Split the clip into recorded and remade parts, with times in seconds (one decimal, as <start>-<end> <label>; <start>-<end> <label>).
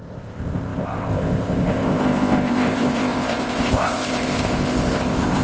0.0-5.4 remade